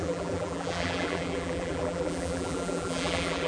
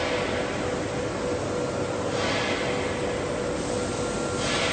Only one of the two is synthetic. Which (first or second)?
first